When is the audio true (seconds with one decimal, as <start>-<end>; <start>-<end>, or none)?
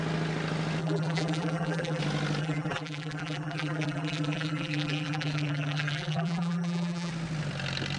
0.0-0.8; 2.0-2.4; 7.1-8.0